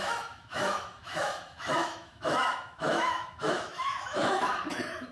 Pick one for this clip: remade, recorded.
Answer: remade